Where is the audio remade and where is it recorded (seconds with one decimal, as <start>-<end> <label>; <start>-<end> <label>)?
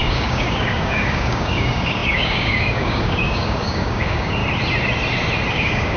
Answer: 0.0-4.4 remade; 4.4-5.5 recorded; 5.5-6.0 remade